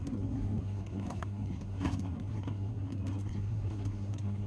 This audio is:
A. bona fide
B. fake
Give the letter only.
B